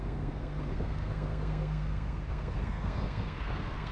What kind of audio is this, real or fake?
fake